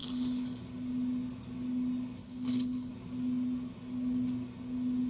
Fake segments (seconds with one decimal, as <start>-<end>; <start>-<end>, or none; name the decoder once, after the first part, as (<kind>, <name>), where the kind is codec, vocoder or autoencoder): 0.0-0.6 (codec, HILCodec); 2.2-2.9